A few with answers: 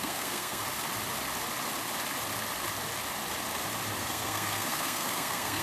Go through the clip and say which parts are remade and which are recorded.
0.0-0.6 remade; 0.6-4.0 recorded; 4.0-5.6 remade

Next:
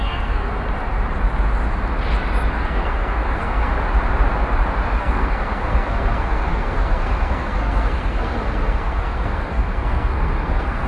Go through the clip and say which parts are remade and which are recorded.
0.0-0.5 remade; 0.5-2.5 recorded; 2.5-3.7 remade; 3.7-5.0 recorded; 5.0-10.9 remade

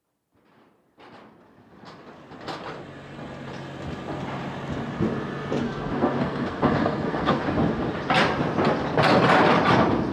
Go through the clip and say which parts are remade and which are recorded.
0.0-5.6 recorded; 5.6-7.4 remade; 7.4-10.1 recorded